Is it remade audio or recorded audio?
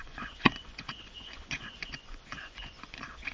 remade